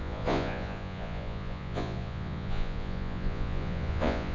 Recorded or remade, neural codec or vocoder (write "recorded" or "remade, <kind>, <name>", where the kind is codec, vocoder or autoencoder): remade, vocoder, Vocos